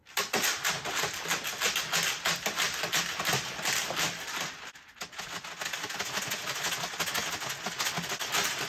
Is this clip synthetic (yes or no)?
no